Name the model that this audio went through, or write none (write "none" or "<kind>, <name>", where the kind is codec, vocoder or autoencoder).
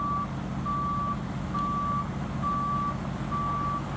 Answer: none